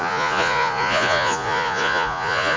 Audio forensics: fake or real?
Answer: fake